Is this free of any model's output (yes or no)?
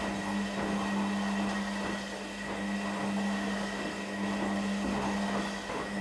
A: yes